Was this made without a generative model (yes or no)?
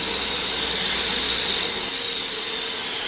yes